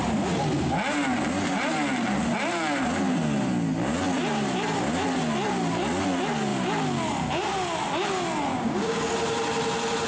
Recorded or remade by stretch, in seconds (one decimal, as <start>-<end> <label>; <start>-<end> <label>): 0.0-8.5 recorded; 8.5-9.0 remade; 9.0-10.1 recorded